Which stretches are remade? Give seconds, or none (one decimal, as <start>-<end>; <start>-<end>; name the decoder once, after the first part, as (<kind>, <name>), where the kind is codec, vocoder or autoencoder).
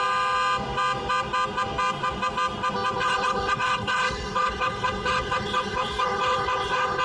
3.0-7.0 (codec, HILCodec)